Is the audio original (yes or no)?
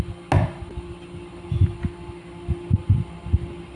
yes